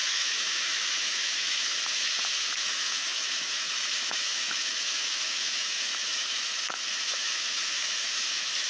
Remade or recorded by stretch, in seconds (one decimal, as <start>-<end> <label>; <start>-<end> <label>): 0.0-8.7 remade